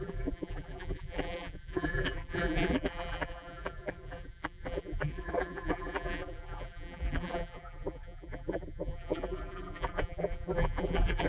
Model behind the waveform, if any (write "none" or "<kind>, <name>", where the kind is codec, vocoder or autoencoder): vocoder, BigVGAN v2